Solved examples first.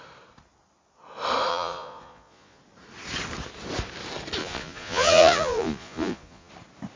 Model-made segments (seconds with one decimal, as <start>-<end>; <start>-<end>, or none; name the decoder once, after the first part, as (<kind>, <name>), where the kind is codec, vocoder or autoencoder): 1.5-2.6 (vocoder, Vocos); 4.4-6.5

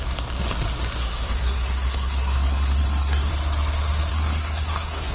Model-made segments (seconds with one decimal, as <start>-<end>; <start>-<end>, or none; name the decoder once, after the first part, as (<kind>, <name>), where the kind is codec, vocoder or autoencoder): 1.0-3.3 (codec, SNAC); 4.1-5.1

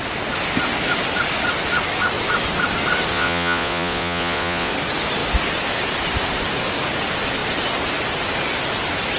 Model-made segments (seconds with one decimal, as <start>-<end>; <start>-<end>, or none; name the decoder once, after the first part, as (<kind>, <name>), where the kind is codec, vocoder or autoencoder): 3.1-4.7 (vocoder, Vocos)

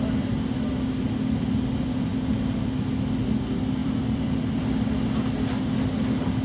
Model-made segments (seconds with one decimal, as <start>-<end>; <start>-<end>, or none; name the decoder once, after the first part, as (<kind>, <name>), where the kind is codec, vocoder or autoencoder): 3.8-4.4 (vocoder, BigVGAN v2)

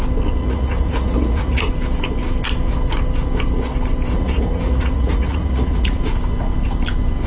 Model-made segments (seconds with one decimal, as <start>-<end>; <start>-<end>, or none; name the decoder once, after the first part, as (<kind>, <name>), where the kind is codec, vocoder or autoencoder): 0.4-1.7 (vocoder, Vocos); 4.1-6.0

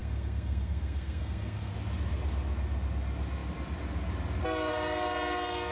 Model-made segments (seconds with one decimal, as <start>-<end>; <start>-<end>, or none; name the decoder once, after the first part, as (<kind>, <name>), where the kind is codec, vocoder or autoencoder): 0.0-1.7 (codec, SNAC)

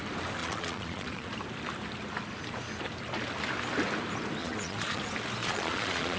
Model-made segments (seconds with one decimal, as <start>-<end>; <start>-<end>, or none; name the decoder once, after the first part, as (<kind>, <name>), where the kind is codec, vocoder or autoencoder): 0.4-1.3 (vocoder, Vocos); 4.4-5.0; 5.4-6.2

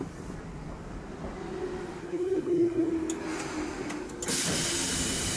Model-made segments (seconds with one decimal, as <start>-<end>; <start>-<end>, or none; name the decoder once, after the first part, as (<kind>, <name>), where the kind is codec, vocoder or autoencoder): 2.0-2.9 (codec, SNAC)